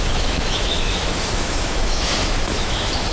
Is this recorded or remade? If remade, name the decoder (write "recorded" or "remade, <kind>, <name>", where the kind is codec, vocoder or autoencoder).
remade, autoencoder, DAC-VAE